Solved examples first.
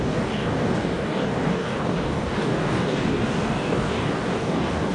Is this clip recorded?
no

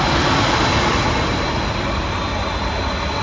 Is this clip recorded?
yes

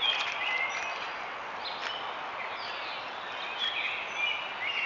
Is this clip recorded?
yes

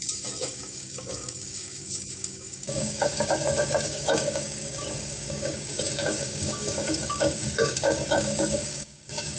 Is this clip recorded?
no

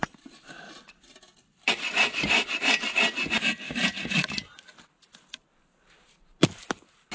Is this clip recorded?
yes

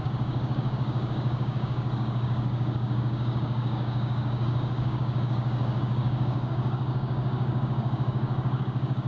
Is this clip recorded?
no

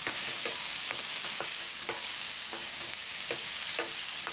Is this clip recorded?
no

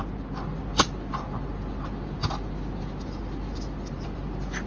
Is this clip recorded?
yes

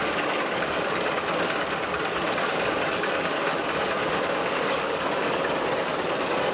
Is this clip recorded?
no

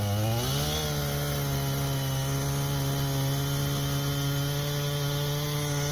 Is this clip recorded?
yes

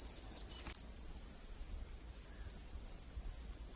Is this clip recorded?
yes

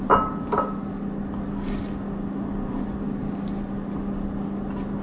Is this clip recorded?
yes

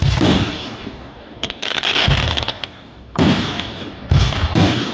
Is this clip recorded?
no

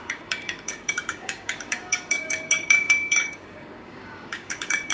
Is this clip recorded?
no